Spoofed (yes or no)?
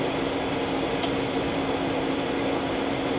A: no